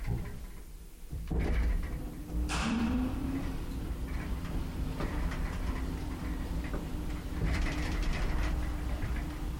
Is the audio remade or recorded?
remade